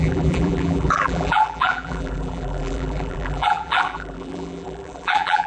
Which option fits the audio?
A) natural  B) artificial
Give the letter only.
B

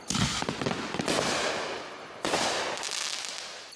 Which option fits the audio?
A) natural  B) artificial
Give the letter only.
A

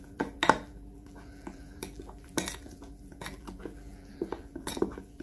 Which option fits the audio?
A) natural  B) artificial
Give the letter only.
B